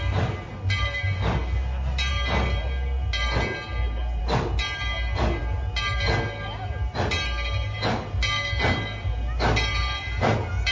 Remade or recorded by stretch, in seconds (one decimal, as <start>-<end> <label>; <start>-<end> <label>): 0.0-10.7 recorded